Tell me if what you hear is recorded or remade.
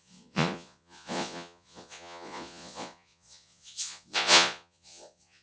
remade